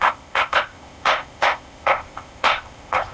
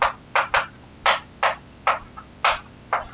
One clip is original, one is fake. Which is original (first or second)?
second